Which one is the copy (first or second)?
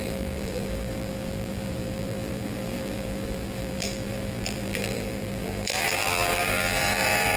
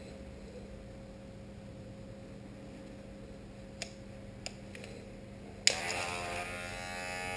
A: first